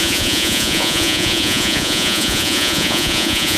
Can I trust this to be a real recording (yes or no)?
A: no